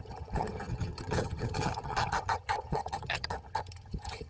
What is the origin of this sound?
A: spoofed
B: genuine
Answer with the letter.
A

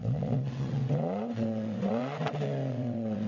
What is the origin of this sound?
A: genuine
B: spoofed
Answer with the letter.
B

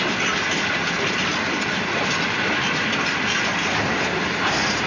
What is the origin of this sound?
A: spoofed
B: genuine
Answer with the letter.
B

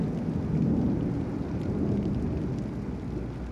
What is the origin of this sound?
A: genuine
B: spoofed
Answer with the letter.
A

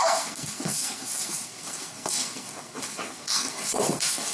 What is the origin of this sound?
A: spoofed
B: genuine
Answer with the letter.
A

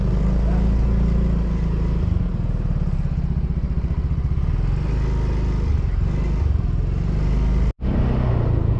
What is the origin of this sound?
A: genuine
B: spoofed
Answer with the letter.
A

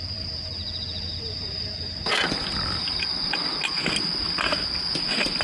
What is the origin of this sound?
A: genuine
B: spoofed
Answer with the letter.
A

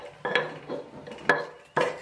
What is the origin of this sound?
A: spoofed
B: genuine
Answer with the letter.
B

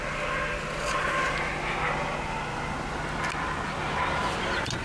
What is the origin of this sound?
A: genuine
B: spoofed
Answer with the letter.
A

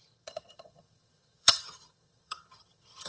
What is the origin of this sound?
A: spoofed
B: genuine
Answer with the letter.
A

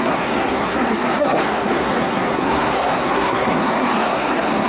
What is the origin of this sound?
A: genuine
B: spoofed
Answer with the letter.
B